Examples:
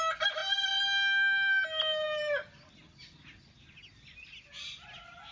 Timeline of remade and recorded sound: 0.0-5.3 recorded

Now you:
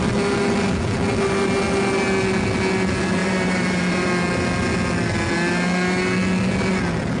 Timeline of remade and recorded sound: 0.0-3.2 recorded; 3.2-4.1 remade; 4.1-7.2 recorded

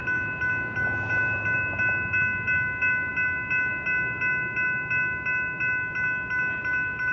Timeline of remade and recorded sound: 0.0-7.1 recorded

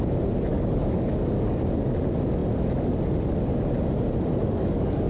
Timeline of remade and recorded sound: 0.0-0.5 recorded; 0.5-1.6 remade; 1.6-4.4 recorded; 4.4-5.1 remade

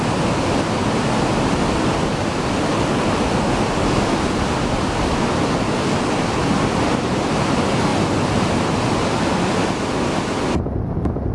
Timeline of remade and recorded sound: 0.0-11.3 recorded

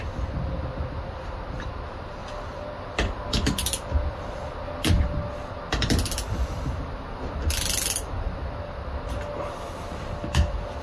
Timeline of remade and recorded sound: 0.0-10.8 recorded

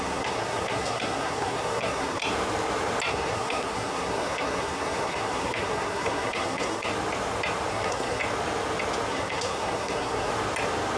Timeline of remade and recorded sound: 0.0-2.2 remade; 2.2-3.1 recorded; 3.1-6.9 remade; 6.9-7.7 recorded; 7.7-8.2 remade; 8.2-9.1 recorded; 9.1-10.3 remade; 10.3-11.0 recorded